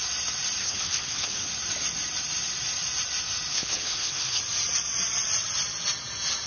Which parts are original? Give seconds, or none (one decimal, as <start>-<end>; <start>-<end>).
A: 0.0-0.6; 1.5-3.5; 4.4-6.5